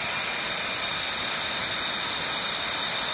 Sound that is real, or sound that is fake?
real